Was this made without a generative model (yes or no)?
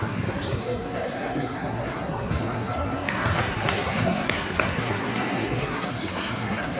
no